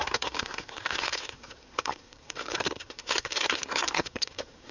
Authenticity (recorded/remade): remade